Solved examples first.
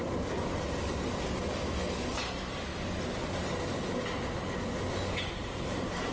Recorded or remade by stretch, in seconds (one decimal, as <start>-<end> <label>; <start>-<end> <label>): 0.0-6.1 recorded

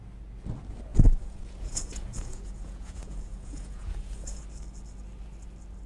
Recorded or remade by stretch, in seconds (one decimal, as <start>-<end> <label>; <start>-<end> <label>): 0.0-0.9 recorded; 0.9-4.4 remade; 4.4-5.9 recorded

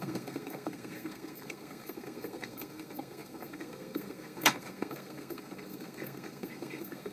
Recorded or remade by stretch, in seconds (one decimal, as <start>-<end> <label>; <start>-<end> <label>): 0.0-7.1 remade